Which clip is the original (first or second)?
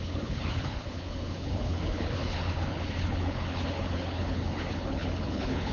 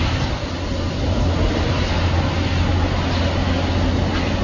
second